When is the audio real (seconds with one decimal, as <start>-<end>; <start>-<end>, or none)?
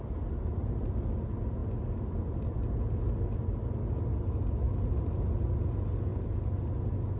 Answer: 0.0-7.2